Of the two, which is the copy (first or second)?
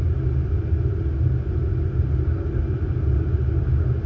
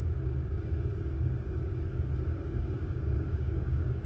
second